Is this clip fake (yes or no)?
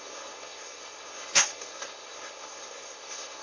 yes